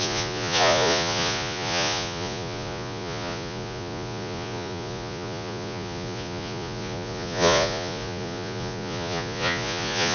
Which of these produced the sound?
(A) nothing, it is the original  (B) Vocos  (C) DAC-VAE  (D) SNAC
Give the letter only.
B